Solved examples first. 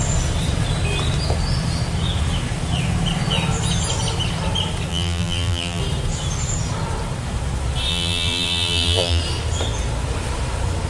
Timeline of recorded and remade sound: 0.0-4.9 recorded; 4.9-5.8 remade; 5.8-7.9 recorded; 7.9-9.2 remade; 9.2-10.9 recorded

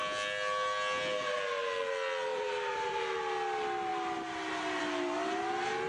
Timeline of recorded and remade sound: 0.0-2.3 recorded; 2.3-3.0 remade; 3.0-5.9 recorded

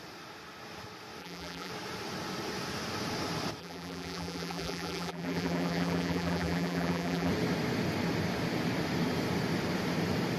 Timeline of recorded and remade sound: 0.0-1.2 recorded; 1.2-1.7 remade; 1.7-3.6 recorded; 3.6-7.3 remade; 7.3-10.4 recorded

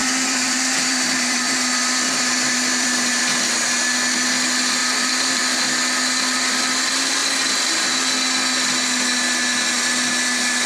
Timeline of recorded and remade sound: 0.0-3.2 remade; 3.2-4.8 recorded; 4.8-5.4 remade; 5.4-10.7 recorded